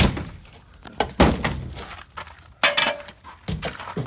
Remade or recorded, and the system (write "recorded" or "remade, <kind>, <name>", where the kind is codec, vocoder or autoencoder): recorded